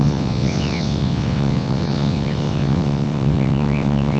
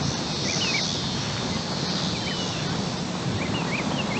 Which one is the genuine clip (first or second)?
second